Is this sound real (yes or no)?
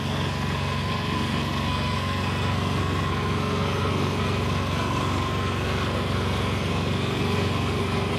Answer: no